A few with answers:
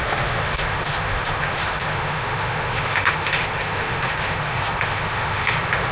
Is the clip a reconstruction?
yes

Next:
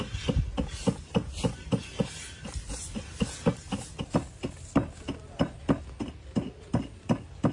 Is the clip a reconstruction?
no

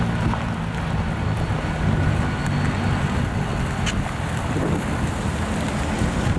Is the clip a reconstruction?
no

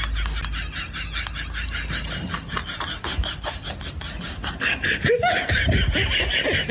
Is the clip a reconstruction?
no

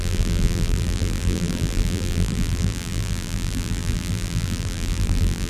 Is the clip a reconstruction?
yes